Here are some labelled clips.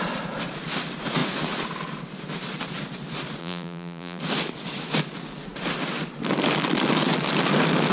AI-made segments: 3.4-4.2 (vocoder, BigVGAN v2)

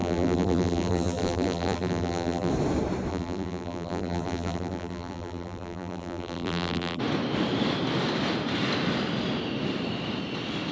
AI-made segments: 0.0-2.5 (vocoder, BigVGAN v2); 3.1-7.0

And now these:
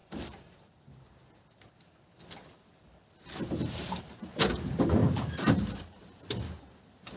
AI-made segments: 0.0-0.7 (vocoder, BigVGAN v2); 3.6-4.4; 5.0-6.2

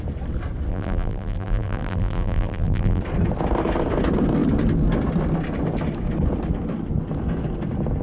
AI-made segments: 0.7-3.0 (vocoder, BigVGAN v2)

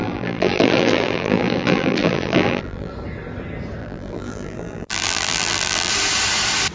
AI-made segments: 0.0-2.9 (vocoder, BigVGAN v2); 3.8-5.9

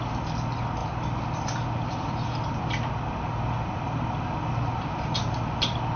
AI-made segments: none